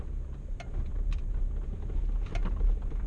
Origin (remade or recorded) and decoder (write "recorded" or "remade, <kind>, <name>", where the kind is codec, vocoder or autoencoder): recorded